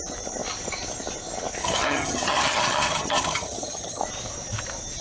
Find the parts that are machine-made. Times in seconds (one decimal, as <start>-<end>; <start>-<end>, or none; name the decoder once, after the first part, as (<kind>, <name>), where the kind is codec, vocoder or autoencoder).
1.6-4.0 (vocoder, HiFi-GAN)